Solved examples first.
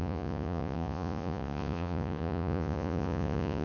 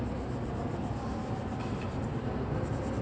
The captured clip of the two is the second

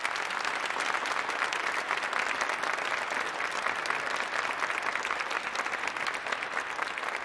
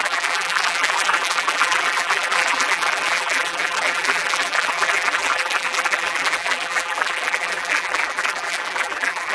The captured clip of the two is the first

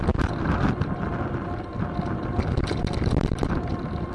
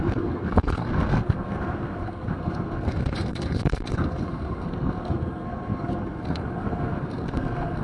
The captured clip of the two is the first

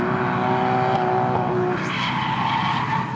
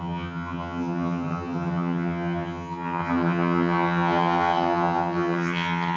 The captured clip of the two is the first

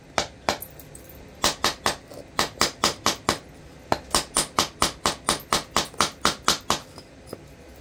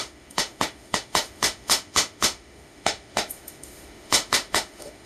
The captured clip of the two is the first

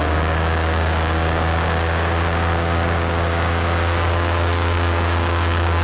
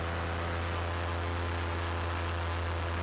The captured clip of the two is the second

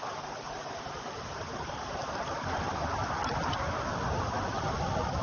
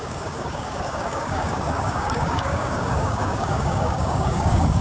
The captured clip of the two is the first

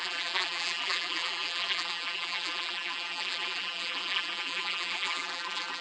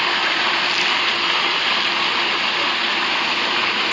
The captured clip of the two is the second